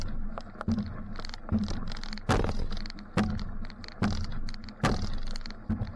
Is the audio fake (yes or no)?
no